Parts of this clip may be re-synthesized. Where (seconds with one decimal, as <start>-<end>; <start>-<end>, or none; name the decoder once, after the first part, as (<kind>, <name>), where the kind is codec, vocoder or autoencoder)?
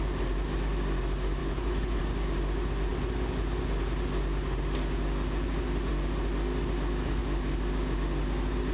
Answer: 1.4-2.0 (codec, HILCodec)